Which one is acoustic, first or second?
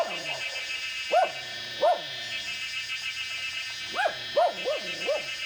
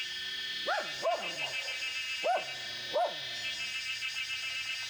second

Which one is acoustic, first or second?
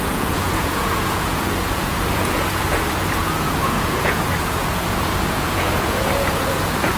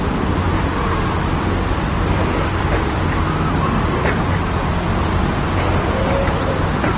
second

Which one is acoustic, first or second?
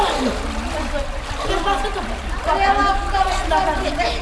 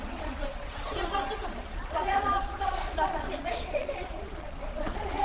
first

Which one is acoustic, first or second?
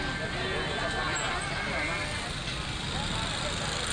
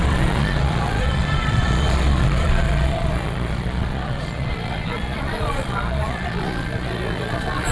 first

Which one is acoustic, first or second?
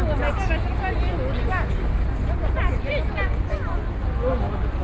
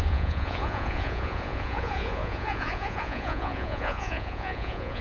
first